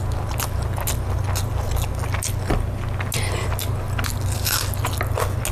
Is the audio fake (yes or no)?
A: no